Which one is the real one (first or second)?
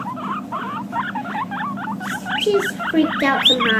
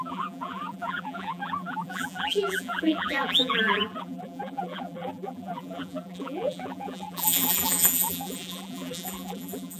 first